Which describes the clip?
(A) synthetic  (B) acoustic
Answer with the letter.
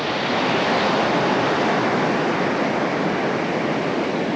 B